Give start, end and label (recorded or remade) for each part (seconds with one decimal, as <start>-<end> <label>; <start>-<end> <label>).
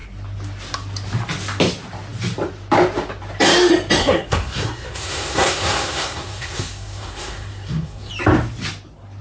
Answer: 0.0-4.0 recorded; 4.0-8.1 remade; 8.1-9.2 recorded